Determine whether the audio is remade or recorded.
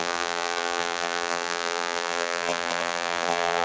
remade